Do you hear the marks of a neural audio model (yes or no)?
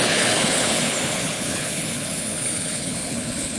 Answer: yes